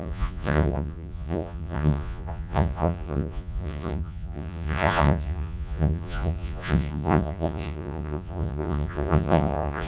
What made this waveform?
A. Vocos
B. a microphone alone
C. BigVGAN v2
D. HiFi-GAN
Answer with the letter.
A